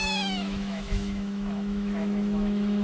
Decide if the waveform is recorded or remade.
remade